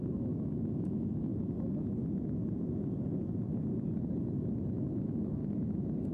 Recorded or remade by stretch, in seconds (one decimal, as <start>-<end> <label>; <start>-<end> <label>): 0.0-1.3 remade; 1.3-5.0 recorded; 5.0-5.4 remade; 5.4-6.1 recorded

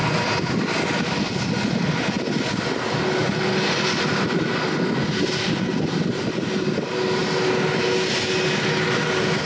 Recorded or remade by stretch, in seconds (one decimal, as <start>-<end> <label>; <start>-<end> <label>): 0.0-9.5 recorded

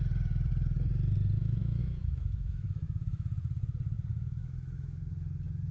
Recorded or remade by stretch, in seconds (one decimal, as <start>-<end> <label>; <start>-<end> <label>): 0.0-1.4 recorded; 1.4-3.3 remade; 3.3-4.1 recorded; 4.1-5.0 remade; 5.0-5.7 recorded

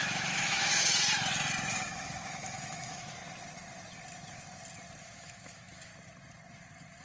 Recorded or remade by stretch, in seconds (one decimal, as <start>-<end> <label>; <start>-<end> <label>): 0.0-0.9 remade; 0.9-1.7 recorded; 1.7-3.2 remade; 3.2-5.0 recorded; 5.0-5.9 remade; 5.9-7.0 recorded

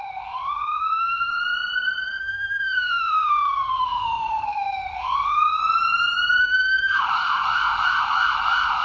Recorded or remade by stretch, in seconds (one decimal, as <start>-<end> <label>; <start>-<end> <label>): 0.0-1.3 remade; 1.3-2.2 recorded; 2.2-5.6 remade; 5.6-6.4 recorded; 6.4-8.8 remade